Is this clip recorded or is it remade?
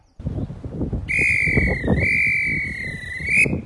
recorded